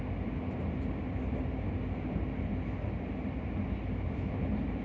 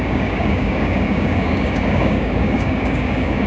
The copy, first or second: second